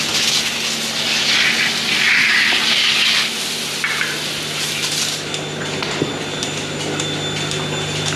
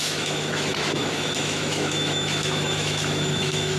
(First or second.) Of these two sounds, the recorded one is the first